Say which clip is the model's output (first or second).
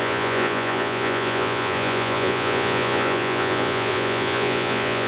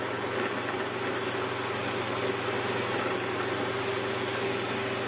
first